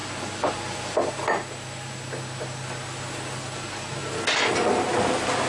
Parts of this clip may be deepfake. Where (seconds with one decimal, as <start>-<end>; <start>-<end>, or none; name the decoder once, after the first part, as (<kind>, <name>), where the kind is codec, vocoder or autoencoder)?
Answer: none